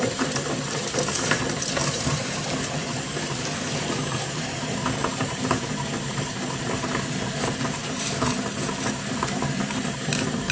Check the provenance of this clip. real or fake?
fake